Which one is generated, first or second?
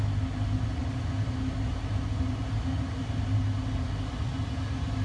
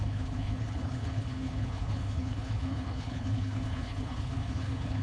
second